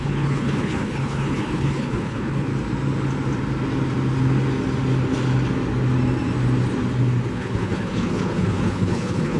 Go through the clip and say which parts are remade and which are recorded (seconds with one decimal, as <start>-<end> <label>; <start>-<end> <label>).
0.0-2.5 remade; 2.5-7.3 recorded; 7.3-9.4 remade